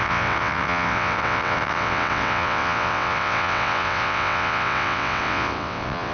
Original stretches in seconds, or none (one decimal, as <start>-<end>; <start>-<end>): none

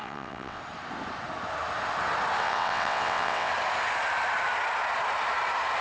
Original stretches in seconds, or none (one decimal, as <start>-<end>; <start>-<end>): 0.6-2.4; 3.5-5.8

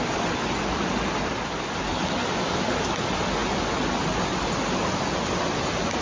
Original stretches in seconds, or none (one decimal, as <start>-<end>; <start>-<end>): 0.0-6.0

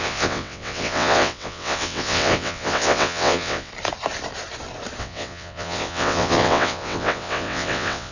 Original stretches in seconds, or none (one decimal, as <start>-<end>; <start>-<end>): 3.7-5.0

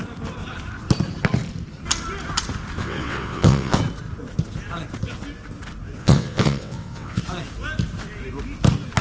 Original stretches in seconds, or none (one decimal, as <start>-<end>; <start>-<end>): 0.0-2.8; 3.8-6.0; 7.2-9.0

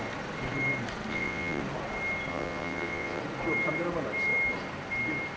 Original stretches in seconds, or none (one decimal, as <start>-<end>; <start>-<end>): 0.0-1.1; 1.6-2.3; 3.2-5.4

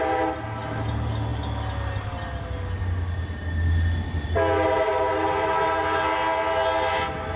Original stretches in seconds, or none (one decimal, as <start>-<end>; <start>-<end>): 0.0-7.4